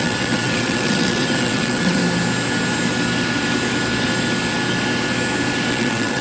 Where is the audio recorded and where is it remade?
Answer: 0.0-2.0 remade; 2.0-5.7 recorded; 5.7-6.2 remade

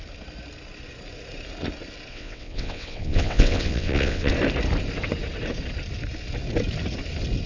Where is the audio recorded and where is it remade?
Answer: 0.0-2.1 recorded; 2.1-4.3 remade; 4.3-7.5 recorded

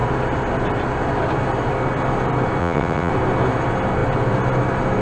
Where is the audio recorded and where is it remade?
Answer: 0.0-2.6 recorded; 2.6-3.1 remade; 3.1-5.0 recorded

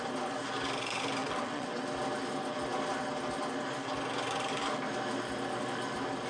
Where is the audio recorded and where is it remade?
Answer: 0.0-1.2 recorded; 1.2-1.8 remade; 1.8-6.3 recorded

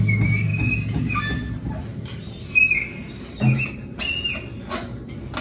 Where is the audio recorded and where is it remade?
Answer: 0.0-5.4 recorded

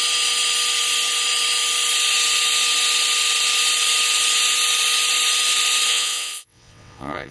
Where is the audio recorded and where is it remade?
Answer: 0.0-5.9 recorded; 5.9-7.3 remade

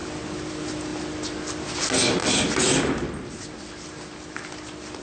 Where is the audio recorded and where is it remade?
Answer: 0.0-5.0 recorded

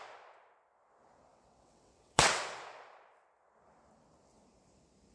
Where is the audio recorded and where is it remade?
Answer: 0.0-1.3 recorded; 1.3-2.4 remade; 2.4-5.1 recorded